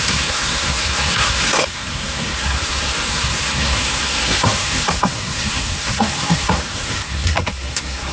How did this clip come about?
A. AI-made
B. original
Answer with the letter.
A